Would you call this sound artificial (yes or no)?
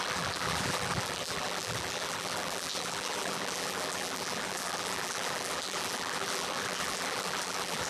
yes